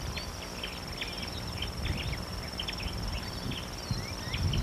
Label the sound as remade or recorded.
recorded